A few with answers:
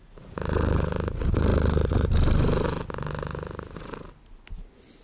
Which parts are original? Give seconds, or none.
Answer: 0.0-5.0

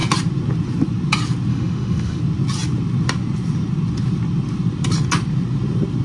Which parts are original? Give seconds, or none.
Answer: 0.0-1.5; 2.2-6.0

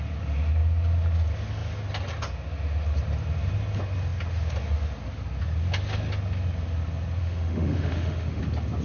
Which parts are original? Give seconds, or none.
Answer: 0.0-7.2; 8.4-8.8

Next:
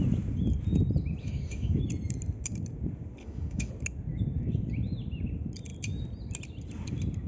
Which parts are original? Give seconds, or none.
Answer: 0.0-1.2; 1.8-3.2; 3.7-7.3

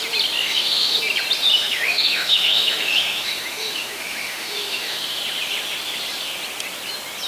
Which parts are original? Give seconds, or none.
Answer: 0.0-0.4; 1.0-1.5; 5.2-7.3

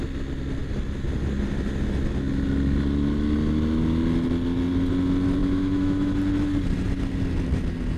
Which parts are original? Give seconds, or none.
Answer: 0.0-5.4; 6.2-8.0

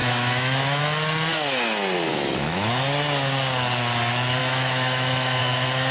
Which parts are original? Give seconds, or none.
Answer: 0.8-2.1; 2.7-4.4; 5.4-5.9